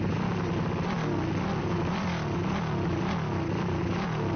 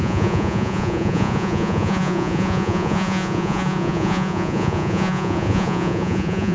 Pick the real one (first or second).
first